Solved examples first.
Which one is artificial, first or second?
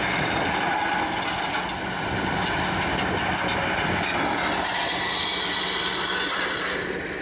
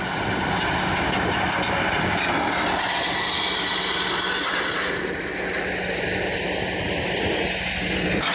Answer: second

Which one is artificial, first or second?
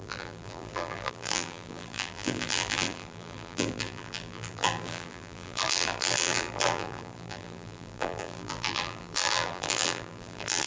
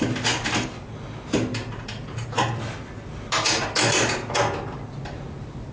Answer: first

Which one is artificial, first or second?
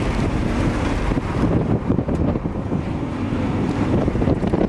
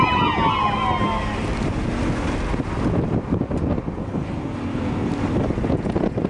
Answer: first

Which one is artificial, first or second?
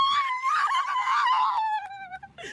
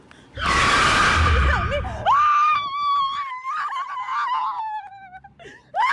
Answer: first